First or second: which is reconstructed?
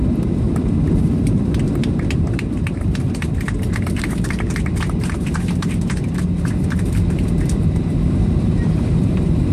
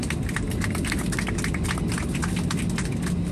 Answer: first